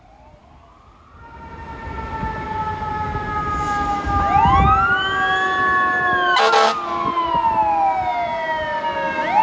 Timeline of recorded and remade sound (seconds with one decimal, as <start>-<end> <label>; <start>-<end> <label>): 0.0-9.4 recorded